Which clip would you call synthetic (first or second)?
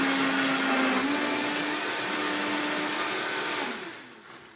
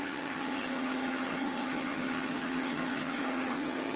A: second